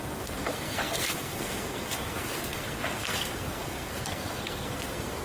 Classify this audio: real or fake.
fake